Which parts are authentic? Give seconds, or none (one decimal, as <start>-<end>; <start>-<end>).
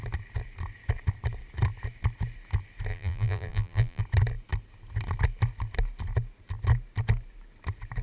0.0-2.9; 4.0-8.0